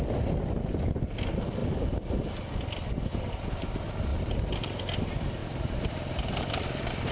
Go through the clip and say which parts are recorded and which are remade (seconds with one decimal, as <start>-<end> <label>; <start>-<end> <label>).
0.0-4.1 recorded; 4.1-4.8 remade; 4.8-5.4 recorded; 5.4-7.1 remade